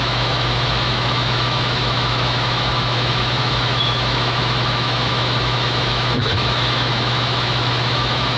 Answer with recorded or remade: remade